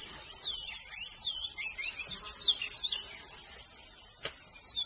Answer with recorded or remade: recorded